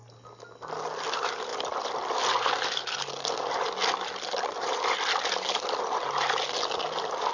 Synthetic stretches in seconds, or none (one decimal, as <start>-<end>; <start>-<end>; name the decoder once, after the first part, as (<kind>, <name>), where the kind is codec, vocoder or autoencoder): none